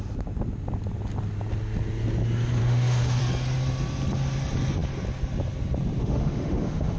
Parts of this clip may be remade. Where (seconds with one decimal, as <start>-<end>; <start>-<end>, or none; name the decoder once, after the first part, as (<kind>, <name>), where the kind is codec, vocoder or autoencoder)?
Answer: 2.6-3.2 (autoencoder, DAC-VAE); 6.0-7.0